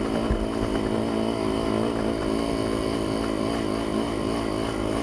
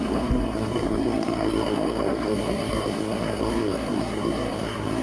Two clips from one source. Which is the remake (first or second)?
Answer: second